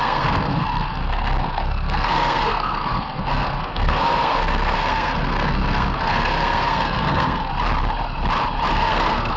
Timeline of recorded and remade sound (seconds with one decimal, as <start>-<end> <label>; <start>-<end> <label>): 0.0-7.5 remade; 7.5-8.7 recorded; 8.7-9.4 remade